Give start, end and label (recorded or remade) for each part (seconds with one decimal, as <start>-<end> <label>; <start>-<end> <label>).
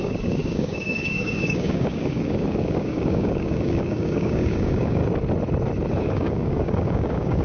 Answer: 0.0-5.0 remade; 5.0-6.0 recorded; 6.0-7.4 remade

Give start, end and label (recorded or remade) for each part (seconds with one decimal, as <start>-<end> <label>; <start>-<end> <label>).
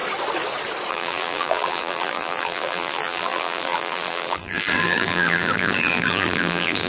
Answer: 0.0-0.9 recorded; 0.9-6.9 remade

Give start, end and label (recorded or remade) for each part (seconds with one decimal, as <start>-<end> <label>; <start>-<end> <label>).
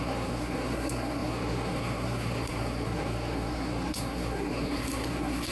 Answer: 0.0-5.5 remade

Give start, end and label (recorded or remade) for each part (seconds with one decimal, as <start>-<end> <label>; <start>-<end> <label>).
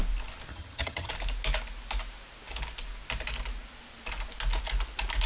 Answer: 0.0-0.5 recorded; 0.5-1.1 remade; 1.1-5.3 recorded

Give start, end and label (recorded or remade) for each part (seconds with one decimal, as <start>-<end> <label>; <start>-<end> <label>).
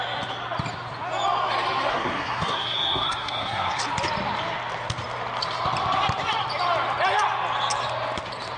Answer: 0.0-1.9 recorded; 1.9-3.8 remade; 3.8-8.6 recorded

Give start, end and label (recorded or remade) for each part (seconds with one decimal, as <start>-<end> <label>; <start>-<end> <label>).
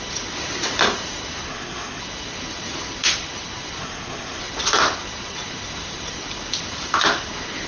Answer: 0.0-1.5 recorded; 1.5-2.0 remade; 2.0-3.8 recorded; 3.8-4.4 remade; 4.4-7.7 recorded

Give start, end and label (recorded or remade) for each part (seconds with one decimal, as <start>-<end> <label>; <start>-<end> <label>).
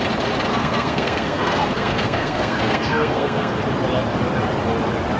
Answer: 0.0-0.5 recorded; 0.5-3.6 remade; 3.6-5.2 recorded